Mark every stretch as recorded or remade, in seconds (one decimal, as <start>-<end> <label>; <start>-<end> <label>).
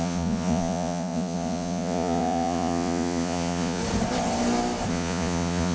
0.0-3.8 remade; 3.8-4.9 recorded; 4.9-5.7 remade